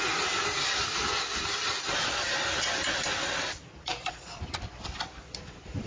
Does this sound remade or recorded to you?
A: recorded